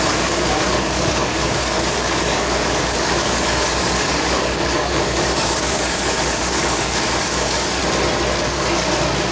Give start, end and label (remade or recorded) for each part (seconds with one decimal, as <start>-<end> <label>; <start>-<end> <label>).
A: 0.0-7.8 remade; 7.8-8.4 recorded; 8.4-9.3 remade